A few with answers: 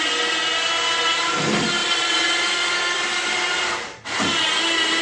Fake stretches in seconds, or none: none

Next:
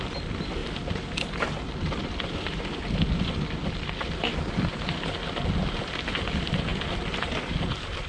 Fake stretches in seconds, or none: none

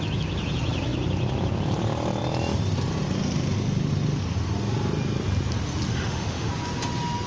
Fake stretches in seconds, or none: 5.9-6.5 (autoencoder, DAC-VAE)

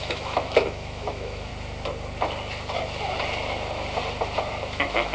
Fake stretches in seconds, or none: 0.0-1.5 (autoencoder, DAC-VAE); 4.5-5.1

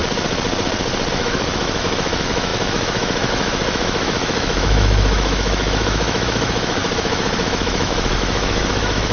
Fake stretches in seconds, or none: 1.1-9.1 (autoencoder, DAC-VAE)

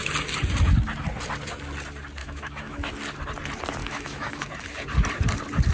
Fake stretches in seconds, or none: 2.2-2.9 (autoencoder, DAC-VAE); 3.8-4.5